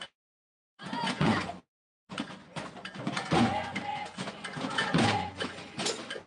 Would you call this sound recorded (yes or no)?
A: no